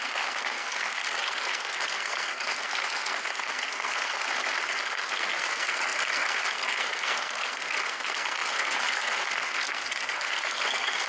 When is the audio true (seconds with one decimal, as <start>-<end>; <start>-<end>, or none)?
none

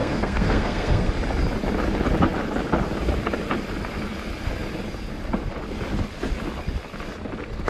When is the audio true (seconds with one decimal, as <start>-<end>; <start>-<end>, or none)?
1.1-7.7

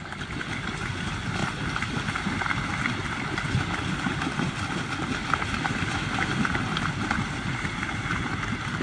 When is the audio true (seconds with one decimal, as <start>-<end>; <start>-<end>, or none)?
0.0-8.8